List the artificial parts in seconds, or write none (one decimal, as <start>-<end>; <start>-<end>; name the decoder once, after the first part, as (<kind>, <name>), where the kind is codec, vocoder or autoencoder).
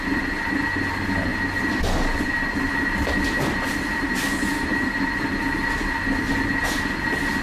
none